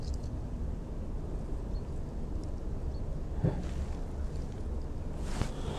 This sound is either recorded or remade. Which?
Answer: recorded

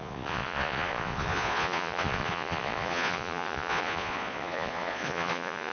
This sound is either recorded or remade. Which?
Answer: remade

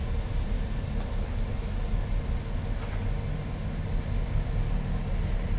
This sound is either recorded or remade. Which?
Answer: recorded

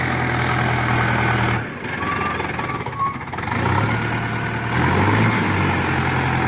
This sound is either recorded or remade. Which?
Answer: recorded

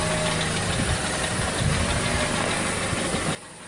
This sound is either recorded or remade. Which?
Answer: recorded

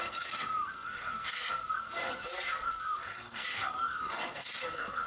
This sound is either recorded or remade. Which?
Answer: remade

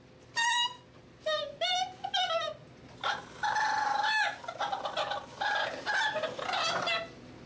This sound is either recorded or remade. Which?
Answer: recorded